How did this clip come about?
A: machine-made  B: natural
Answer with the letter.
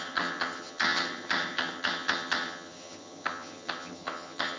A